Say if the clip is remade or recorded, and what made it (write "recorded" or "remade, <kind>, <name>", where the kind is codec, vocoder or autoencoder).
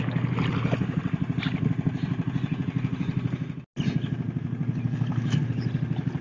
recorded